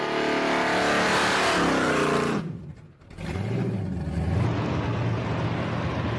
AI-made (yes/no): no